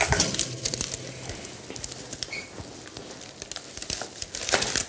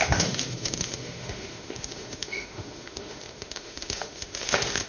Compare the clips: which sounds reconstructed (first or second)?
second